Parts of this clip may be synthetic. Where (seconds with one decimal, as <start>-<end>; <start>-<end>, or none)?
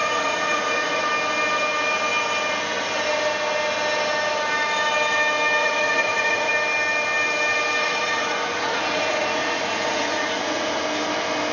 0.0-1.1; 5.6-6.5; 7.8-10.8